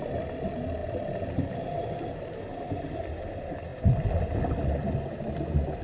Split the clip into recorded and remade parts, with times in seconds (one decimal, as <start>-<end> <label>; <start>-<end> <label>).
0.0-5.8 recorded

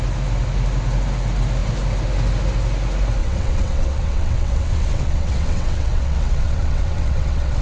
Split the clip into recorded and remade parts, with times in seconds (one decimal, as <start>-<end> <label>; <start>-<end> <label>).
0.0-3.2 recorded; 3.2-7.6 remade

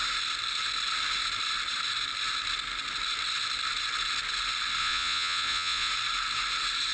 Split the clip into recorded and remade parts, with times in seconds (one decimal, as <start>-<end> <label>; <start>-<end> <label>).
0.0-4.8 recorded; 4.8-5.9 remade; 5.9-6.9 recorded

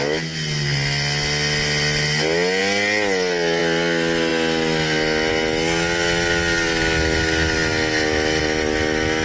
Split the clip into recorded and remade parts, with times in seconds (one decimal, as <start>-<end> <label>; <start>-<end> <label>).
0.0-9.2 recorded

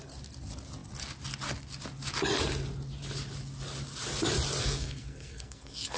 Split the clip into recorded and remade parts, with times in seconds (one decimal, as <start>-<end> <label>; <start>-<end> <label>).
0.0-4.6 recorded; 4.6-6.0 remade

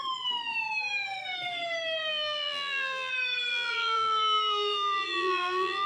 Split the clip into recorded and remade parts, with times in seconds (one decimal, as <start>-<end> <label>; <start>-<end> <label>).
0.0-2.1 recorded; 2.1-3.1 remade; 3.1-3.5 recorded; 3.5-5.9 remade